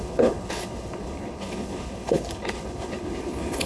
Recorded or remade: remade